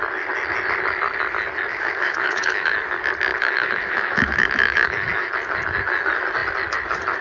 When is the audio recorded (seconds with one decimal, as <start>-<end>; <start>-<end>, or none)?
0.0-1.7; 2.7-3.3; 5.3-7.2